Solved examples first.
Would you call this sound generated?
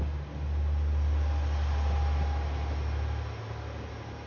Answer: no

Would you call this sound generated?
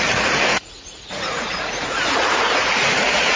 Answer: yes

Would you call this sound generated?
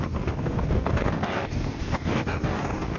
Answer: yes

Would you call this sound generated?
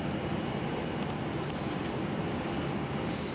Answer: no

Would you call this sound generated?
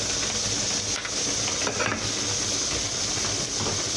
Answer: no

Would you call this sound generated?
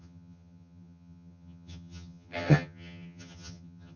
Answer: yes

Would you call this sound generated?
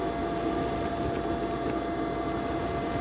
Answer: no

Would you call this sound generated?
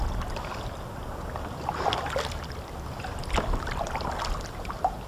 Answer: no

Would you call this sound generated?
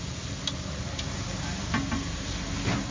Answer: no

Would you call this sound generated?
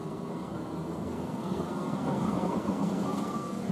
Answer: yes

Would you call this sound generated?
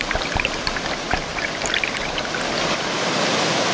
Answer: no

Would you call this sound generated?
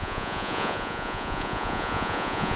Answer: yes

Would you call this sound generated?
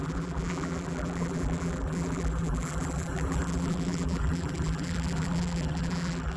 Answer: yes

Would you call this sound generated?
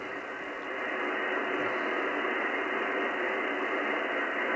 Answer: yes